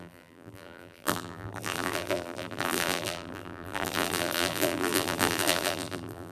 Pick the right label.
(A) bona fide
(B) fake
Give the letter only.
B